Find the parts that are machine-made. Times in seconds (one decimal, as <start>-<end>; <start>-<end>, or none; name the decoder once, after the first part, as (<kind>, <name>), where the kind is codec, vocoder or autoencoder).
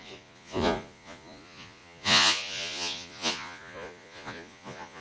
0.0-5.0 (vocoder, Vocos)